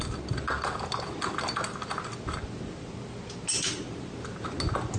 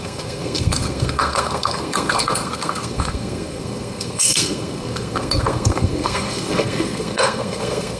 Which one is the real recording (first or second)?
first